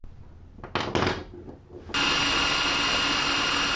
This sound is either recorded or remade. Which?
recorded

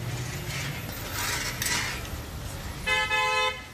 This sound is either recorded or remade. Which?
recorded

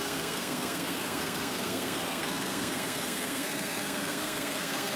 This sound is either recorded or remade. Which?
remade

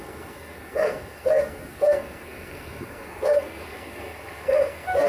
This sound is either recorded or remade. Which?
remade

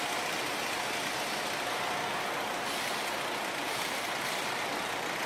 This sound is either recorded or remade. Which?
recorded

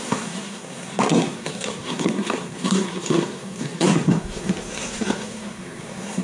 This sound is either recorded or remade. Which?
remade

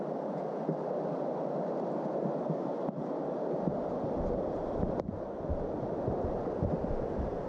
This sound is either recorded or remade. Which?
recorded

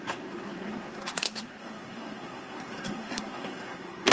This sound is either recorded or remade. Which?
remade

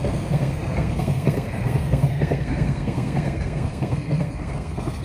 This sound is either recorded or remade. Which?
remade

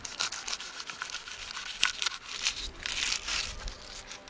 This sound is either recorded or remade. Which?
recorded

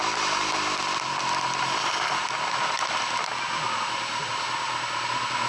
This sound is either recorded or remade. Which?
recorded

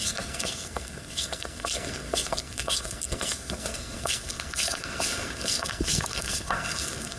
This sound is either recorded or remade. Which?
remade